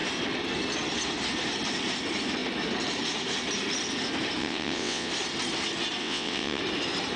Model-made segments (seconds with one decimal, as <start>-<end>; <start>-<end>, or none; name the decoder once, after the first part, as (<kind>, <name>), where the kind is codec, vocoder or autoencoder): 4.4-5.1 (vocoder, WaveNeXt); 6.0-6.6